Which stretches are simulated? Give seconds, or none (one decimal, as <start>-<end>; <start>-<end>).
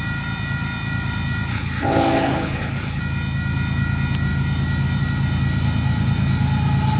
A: 1.5-3.0